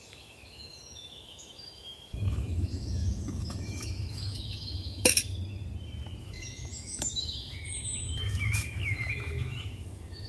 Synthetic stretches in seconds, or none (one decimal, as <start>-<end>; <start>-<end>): 0.0-5.2; 6.2-10.3